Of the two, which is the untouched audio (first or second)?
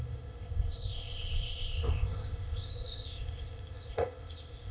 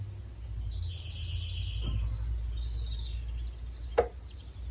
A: second